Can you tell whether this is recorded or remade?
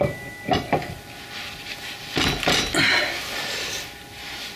recorded